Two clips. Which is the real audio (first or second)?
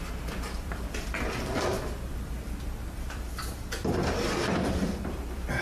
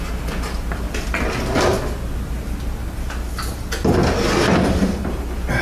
second